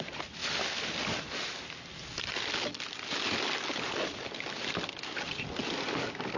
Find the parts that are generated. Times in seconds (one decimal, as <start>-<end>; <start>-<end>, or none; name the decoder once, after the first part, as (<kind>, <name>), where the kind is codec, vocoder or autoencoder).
none